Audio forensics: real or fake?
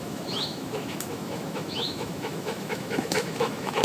fake